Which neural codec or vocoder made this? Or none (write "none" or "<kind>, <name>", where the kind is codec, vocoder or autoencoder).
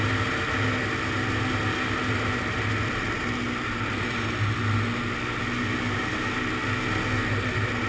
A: none